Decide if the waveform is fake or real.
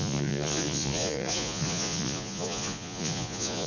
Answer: fake